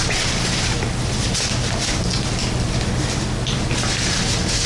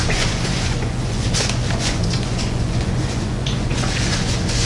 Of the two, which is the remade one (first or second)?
second